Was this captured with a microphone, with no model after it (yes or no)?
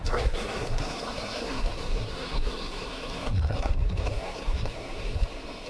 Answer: no